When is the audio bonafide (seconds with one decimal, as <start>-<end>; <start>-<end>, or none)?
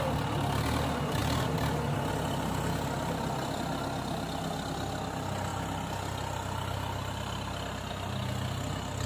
0.0-9.1